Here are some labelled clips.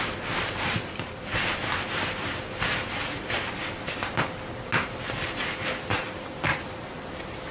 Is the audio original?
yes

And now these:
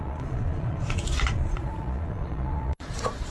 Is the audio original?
no